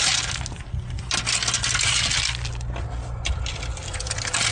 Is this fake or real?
real